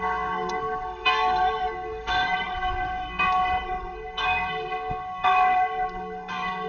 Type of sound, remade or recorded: remade